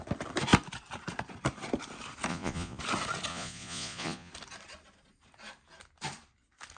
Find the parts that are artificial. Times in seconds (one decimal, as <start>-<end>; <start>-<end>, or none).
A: 2.3-2.8; 3.3-4.3